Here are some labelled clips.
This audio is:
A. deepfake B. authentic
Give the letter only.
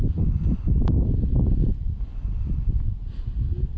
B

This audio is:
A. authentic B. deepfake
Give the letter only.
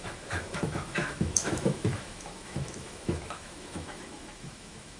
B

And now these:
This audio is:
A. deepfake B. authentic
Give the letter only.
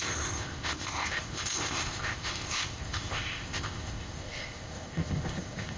A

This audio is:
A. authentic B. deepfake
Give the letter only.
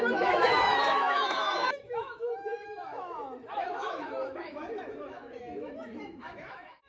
B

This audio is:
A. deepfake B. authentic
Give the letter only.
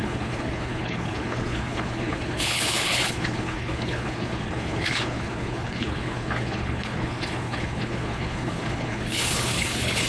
A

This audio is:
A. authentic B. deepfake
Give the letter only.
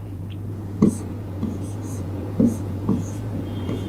B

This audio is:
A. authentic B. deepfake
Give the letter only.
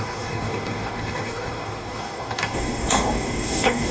B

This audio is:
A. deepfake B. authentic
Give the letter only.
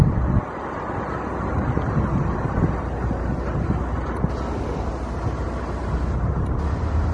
B